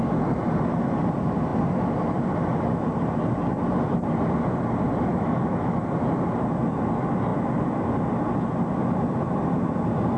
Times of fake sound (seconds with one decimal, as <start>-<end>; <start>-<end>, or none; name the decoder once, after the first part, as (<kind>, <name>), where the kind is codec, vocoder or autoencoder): 5.1-5.8 (autoencoder, DAC-VAE)